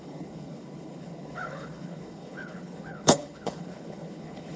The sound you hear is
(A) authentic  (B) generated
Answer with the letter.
B